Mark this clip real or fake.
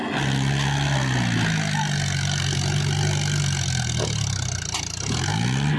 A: real